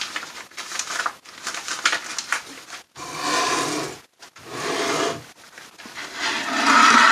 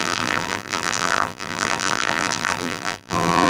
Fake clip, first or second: second